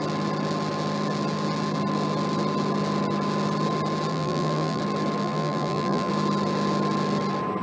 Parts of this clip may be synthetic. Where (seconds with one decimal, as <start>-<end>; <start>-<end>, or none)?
4.1-4.8; 5.2-6.1